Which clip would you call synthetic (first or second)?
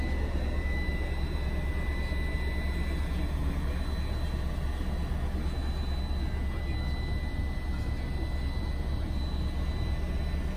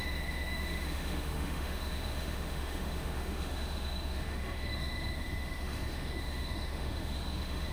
second